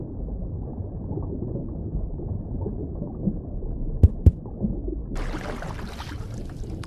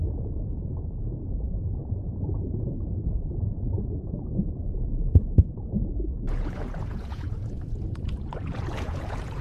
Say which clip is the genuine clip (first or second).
first